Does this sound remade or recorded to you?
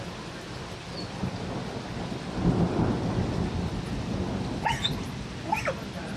recorded